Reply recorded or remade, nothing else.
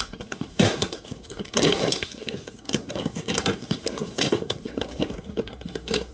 remade